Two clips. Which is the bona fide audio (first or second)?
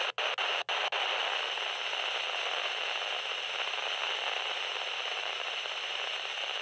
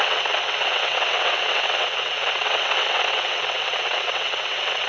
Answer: first